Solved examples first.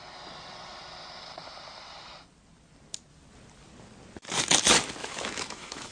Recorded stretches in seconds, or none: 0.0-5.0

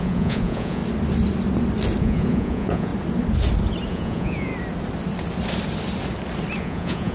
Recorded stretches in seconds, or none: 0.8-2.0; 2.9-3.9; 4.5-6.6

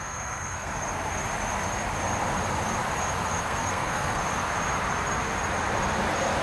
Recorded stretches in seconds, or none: 0.7-3.4; 4.2-6.4

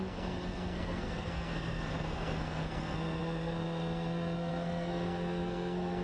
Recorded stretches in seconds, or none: none